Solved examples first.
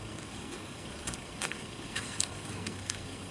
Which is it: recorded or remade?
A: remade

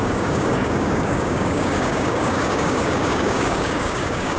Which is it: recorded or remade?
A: remade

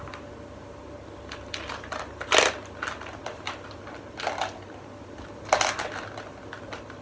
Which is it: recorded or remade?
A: recorded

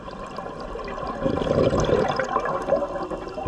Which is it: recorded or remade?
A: recorded